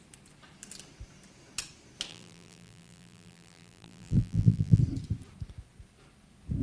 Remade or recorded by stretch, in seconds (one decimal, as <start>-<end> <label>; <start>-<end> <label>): 0.0-2.1 recorded; 2.1-4.8 remade; 4.8-6.6 recorded